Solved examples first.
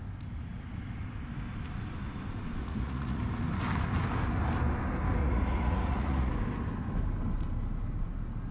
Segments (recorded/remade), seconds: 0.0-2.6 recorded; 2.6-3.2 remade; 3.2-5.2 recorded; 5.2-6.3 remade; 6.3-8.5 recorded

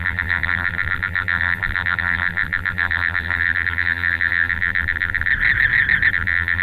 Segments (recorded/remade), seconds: 0.0-5.3 remade; 5.3-6.1 recorded; 6.1-6.6 remade

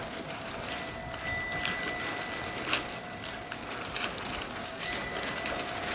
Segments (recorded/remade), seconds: 0.0-4.6 recorded; 4.6-5.3 remade; 5.3-5.9 recorded

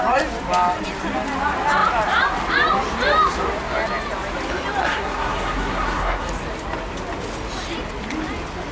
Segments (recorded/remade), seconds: 0.0-4.8 recorded; 4.8-6.3 remade; 6.3-8.7 recorded